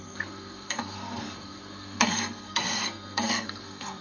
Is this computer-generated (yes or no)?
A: yes